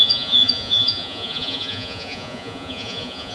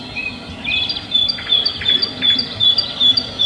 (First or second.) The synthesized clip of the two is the first